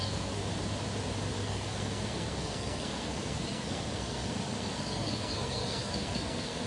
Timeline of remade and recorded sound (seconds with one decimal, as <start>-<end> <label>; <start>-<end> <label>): 0.0-0.4 remade; 0.4-1.4 recorded; 1.4-6.7 remade